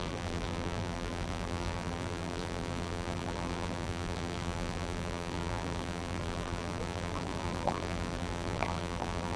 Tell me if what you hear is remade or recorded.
remade